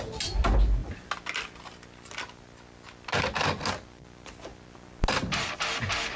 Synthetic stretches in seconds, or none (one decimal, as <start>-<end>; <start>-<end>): none